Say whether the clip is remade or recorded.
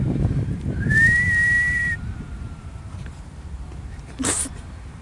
remade